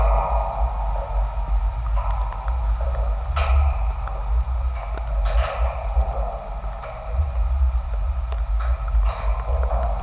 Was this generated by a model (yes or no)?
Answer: no